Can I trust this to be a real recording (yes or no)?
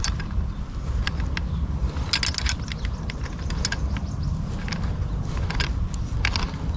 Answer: yes